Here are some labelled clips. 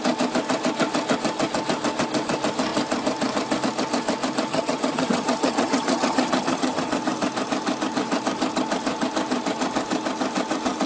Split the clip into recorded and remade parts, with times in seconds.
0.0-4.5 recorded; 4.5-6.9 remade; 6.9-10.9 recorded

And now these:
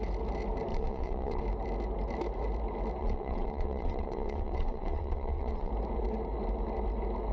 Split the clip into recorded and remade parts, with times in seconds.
0.0-0.7 recorded; 0.7-1.4 remade; 1.4-3.0 recorded; 3.0-5.7 remade; 5.7-7.3 recorded

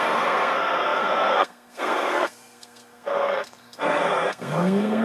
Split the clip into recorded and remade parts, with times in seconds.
0.0-5.0 remade